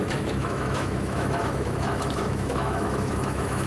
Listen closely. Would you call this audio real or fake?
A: fake